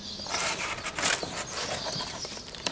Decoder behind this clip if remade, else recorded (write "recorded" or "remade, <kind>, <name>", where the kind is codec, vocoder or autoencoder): recorded